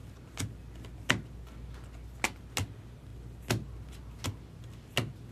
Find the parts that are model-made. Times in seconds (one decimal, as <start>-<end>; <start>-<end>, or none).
none